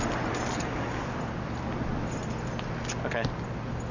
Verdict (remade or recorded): recorded